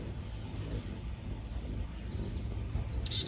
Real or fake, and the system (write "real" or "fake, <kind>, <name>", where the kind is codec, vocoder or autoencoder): real